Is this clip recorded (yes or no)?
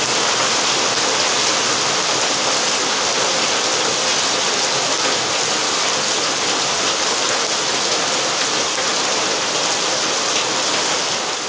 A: yes